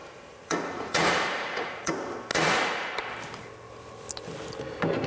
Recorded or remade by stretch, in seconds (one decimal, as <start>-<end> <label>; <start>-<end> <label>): 0.0-1.9 remade; 1.9-2.3 recorded; 2.3-2.9 remade; 2.9-5.1 recorded